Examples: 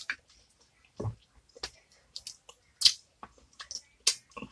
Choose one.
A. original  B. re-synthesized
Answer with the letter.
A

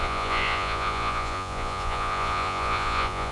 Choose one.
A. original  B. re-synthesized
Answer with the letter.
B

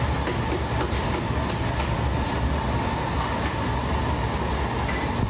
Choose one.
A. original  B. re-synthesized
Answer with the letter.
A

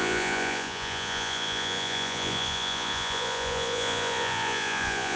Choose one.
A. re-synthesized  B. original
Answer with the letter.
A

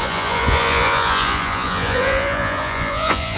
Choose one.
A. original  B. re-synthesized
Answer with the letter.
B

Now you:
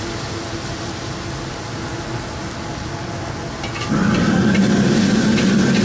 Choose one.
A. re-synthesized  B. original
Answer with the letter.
B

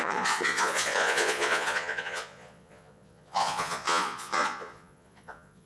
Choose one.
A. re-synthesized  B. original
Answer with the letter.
A